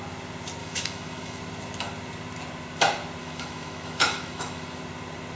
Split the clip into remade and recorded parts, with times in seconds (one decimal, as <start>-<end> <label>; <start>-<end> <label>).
0.0-0.6 recorded; 0.6-1.4 remade; 1.4-3.2 recorded; 3.2-4.8 remade; 4.8-5.4 recorded